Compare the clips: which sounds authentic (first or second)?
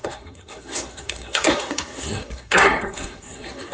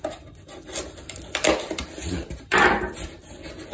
second